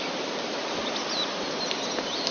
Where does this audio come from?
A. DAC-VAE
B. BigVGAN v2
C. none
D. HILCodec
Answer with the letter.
C